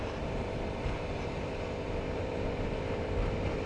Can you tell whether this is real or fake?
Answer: fake